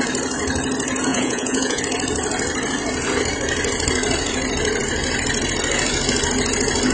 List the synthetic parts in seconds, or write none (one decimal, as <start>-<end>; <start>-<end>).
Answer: 1.1-1.8